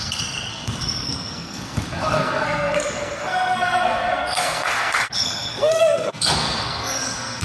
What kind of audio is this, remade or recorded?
remade